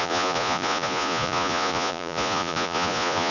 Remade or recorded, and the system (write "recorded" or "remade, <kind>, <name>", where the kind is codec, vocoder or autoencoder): remade, vocoder, Vocos